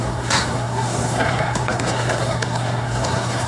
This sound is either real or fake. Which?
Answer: fake